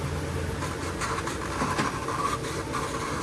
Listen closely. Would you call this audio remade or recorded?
recorded